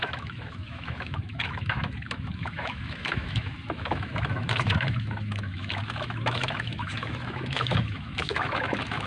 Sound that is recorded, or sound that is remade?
remade